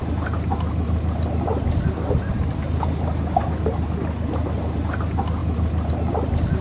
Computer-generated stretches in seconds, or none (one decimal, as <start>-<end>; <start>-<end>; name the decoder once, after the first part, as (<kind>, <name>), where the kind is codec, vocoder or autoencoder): none

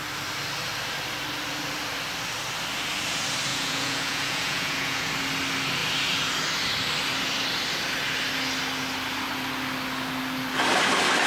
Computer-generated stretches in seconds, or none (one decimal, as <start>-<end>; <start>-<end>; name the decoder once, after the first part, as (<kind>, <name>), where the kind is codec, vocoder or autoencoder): 3.5-5.1 (vocoder, Vocos)

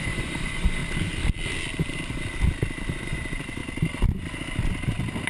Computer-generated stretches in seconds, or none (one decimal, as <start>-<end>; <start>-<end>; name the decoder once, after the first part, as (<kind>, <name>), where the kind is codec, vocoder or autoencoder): 0.0-0.8 (vocoder, Vocos); 3.0-3.6

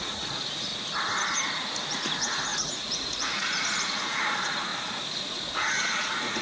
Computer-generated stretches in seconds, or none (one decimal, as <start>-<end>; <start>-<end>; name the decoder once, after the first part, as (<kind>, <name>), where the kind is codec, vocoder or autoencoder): 0.0-0.7 (vocoder, Vocos); 1.9-4.7; 5.2-6.4

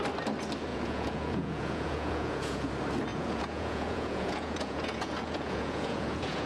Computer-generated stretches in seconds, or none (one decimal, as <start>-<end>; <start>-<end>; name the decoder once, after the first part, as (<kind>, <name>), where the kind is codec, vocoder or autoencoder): 0.7-2.7 (vocoder, Vocos); 3.1-6.5

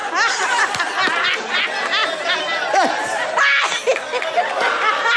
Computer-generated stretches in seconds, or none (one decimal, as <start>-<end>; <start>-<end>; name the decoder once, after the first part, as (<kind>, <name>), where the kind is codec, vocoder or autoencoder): none